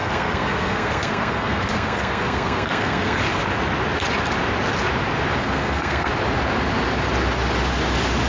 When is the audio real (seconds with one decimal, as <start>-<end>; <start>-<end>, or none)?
3.2-5.4; 6.1-8.3